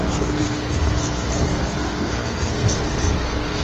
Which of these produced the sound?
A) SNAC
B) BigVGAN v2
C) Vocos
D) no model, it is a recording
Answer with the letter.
A